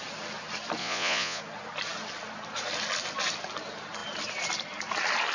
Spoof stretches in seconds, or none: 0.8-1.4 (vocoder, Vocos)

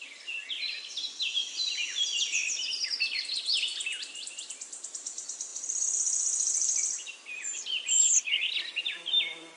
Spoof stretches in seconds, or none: 3.7-4.9 (vocoder, BigVGAN v2); 5.5-9.1

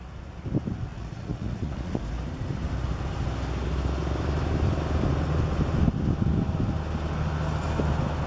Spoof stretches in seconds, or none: 0.9-2.0 (vocoder, Vocos)

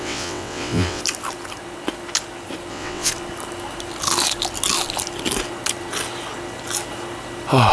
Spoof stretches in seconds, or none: 0.0-1.0 (vocoder, WaveNeXt); 2.7-3.1